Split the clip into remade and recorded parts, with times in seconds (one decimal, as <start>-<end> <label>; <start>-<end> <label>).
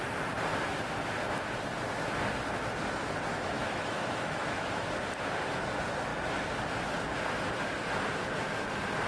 0.0-3.3 recorded; 3.3-4.8 remade; 4.8-9.1 recorded